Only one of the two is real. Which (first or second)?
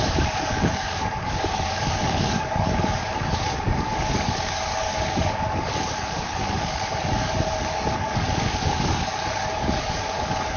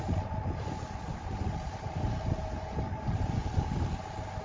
second